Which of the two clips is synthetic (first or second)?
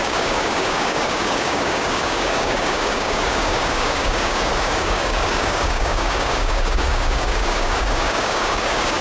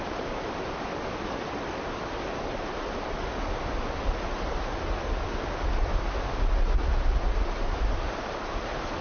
first